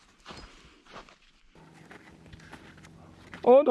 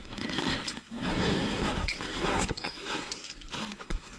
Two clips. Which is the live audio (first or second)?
first